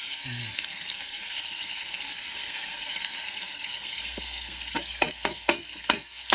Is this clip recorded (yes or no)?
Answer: no